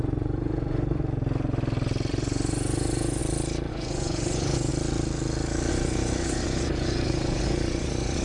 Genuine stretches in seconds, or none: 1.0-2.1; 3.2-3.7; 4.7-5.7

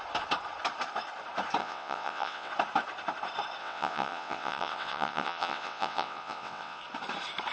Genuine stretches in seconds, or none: 0.0-1.6; 2.5-3.6; 6.8-7.5

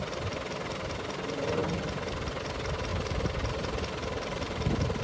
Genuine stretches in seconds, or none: 0.0-2.9

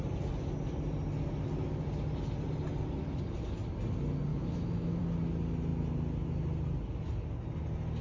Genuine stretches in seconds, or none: 0.0-4.3; 5.0-8.0

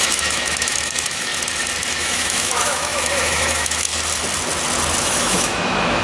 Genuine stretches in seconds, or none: 1.3-1.9; 3.9-5.0